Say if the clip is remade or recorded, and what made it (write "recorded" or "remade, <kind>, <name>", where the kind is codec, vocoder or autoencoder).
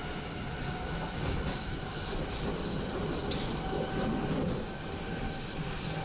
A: recorded